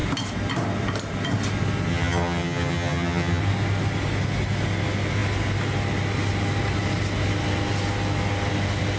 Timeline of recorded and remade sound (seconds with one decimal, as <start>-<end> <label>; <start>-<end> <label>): 0.0-1.9 recorded; 1.9-3.4 remade; 3.4-9.0 recorded

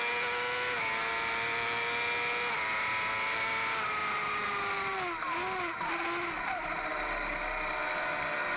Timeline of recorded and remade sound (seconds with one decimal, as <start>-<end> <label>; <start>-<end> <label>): 0.0-8.6 recorded

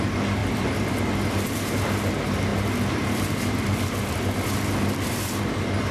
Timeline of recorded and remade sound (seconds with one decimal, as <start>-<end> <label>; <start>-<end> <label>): 0.0-0.4 recorded; 0.4-1.0 remade; 1.0-2.5 recorded; 2.5-5.4 remade; 5.4-5.9 recorded

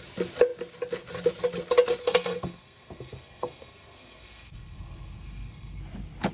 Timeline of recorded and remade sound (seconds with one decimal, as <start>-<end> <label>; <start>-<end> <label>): 0.0-2.0 recorded; 2.0-5.8 remade; 5.8-6.3 recorded